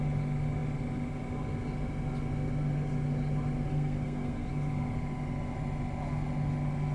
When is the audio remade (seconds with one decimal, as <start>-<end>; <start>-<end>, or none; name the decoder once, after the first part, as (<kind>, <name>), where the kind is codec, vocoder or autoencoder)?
3.7-4.5 (codec, SNAC)